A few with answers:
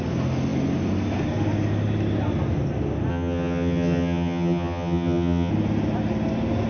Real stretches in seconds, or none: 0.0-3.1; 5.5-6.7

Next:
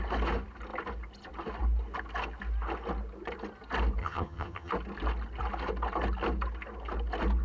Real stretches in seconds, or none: 0.0-4.0; 4.7-7.4

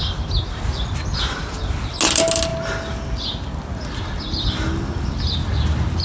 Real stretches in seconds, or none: 0.0-6.0

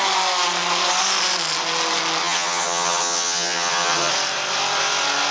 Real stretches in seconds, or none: 0.0-2.2; 4.1-5.3

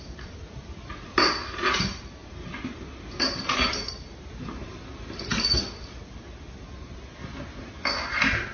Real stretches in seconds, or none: 0.0-8.5

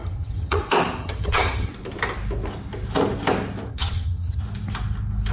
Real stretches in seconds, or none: 0.6-1.0; 1.7-3.7; 4.4-5.3